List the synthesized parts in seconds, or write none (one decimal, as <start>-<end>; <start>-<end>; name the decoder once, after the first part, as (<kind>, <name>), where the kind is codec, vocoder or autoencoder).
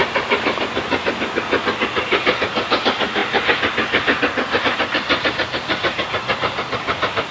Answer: none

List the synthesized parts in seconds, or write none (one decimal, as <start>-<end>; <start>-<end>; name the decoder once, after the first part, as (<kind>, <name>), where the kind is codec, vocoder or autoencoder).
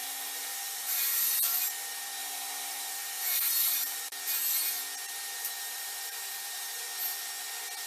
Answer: 0.0-1.7 (vocoder, BigVGAN v2); 2.2-4.0; 5.4-6.8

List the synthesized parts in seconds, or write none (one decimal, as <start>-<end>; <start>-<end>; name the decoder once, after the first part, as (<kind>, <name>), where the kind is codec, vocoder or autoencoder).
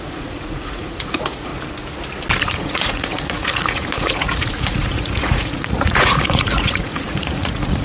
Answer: 0.0-1.5 (vocoder, Vocos); 2.4-7.8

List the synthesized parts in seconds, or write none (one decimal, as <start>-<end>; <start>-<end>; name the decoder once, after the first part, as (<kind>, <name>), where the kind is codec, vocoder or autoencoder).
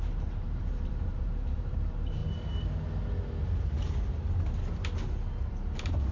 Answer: 0.0-2.2 (vocoder, BigVGAN v2); 5.5-6.1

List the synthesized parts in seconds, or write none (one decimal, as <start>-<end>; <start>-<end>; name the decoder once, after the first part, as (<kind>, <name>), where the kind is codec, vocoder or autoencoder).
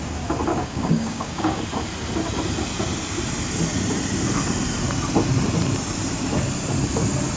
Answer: 0.5-1.6 (codec, DAC)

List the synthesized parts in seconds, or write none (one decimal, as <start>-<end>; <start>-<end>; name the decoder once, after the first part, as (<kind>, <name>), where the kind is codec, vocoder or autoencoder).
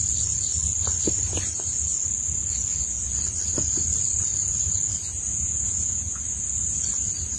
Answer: 5.3-6.2 (vocoder, Vocos)